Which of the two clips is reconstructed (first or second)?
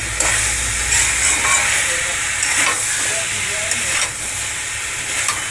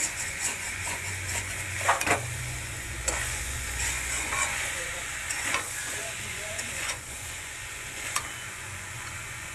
second